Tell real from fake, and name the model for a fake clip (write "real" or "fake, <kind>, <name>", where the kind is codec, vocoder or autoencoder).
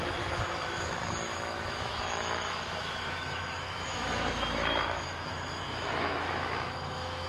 fake, autoencoder, DAC-VAE